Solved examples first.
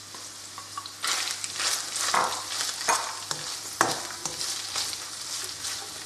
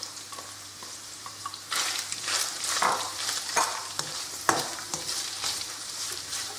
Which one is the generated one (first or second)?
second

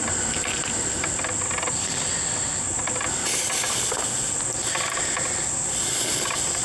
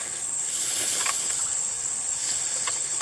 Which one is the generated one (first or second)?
second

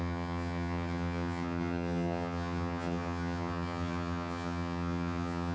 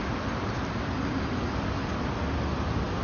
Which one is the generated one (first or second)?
first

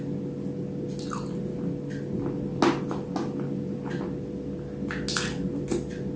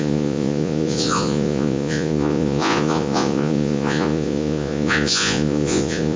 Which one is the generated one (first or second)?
second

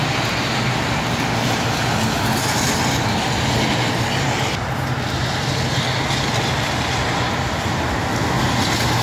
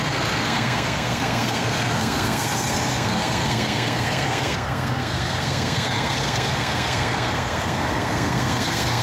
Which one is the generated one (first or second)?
second